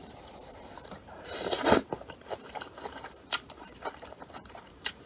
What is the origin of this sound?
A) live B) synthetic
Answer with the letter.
B